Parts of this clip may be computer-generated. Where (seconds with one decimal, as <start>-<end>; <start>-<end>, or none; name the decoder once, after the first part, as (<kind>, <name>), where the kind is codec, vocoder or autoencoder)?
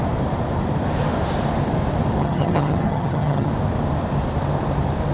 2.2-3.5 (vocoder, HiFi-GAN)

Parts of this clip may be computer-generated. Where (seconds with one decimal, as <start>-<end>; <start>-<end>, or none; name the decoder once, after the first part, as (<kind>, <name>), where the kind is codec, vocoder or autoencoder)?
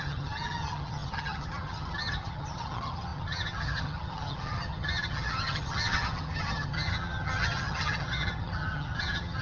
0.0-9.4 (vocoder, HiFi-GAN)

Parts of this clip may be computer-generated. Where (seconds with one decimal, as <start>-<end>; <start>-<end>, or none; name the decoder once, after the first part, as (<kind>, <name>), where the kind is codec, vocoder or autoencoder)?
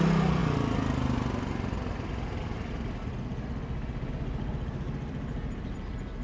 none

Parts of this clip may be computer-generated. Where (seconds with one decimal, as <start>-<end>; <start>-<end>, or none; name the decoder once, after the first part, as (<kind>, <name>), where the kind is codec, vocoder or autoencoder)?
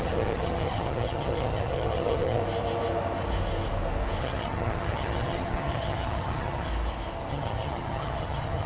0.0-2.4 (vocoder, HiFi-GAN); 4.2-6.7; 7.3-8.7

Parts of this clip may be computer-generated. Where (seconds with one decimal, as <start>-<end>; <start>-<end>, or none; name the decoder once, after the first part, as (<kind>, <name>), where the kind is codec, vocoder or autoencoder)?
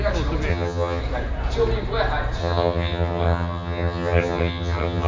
0.5-1.0 (vocoder, HiFi-GAN); 2.4-5.1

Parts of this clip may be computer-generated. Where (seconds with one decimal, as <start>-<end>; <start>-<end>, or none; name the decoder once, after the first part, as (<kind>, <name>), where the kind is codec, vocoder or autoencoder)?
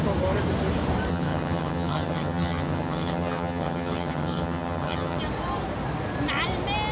1.1-5.2 (vocoder, HiFi-GAN)